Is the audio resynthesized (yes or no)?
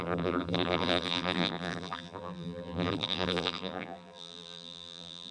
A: yes